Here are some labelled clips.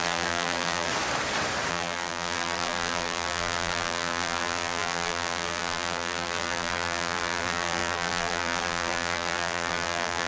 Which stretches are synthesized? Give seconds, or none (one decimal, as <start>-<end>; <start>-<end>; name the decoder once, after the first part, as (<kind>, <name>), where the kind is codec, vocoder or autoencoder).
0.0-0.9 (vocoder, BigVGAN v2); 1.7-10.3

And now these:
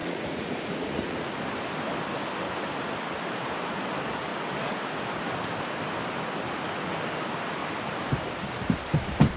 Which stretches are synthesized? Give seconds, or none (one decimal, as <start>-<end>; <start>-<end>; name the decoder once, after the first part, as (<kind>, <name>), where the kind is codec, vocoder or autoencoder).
0.0-1.3 (vocoder, Vocos)

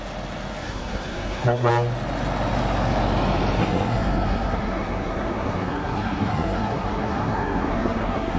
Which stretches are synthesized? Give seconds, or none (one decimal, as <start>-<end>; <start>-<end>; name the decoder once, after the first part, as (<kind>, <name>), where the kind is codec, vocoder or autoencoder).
0.6-1.7 (codec, SNAC); 3.6-8.4

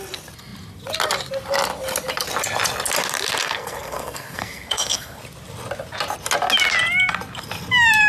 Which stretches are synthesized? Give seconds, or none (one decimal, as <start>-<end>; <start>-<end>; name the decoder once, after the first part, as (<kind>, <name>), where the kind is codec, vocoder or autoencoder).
3.4-5.2 (codec, SNAC)

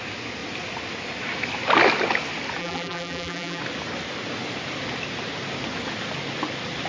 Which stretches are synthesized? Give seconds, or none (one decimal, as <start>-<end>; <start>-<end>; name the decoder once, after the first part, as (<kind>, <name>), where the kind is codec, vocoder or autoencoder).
2.6-3.6 (vocoder, BigVGAN v2)

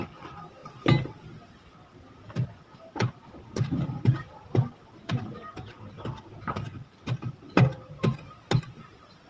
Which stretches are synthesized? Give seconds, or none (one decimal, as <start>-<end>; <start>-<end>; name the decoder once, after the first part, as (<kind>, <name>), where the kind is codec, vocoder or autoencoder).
none

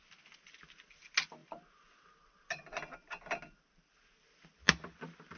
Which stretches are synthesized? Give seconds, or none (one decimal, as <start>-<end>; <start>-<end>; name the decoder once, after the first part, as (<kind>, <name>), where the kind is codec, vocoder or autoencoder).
none